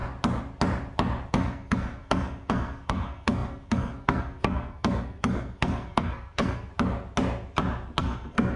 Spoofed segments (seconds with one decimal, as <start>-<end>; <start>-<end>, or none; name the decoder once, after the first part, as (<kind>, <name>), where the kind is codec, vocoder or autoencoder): 1.3-6.7 (codec, SNAC); 8.0-8.6